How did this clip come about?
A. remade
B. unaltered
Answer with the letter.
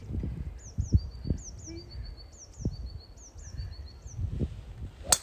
B